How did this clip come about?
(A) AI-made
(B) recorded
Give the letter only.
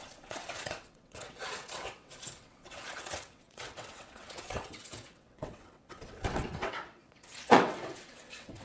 A